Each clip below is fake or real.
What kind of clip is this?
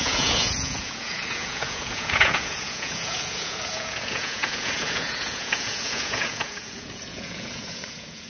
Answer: fake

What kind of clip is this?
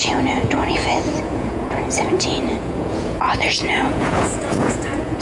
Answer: fake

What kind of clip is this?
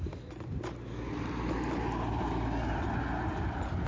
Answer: real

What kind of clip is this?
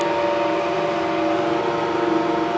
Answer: real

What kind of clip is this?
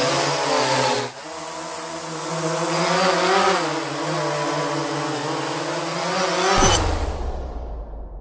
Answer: real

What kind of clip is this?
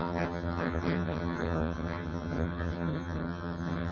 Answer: fake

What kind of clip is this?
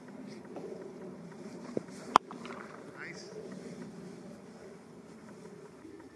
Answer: real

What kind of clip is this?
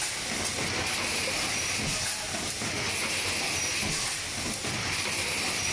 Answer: real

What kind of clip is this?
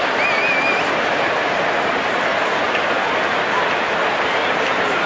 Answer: real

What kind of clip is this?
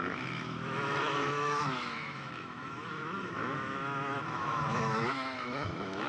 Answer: fake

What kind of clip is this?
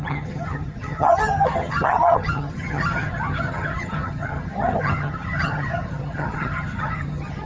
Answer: fake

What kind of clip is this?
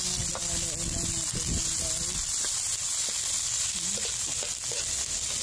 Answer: real